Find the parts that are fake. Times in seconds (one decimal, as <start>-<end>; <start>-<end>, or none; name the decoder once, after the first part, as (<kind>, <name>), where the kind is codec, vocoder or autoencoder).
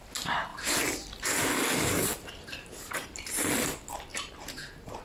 0.5-3.5 (vocoder, BigVGAN v2); 4.1-5.0